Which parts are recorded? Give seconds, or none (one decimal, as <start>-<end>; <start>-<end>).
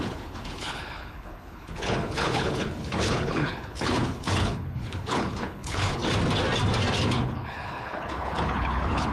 6.0-7.0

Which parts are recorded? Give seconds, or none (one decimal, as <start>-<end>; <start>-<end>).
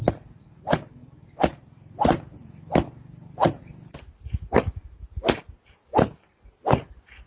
0.0-7.3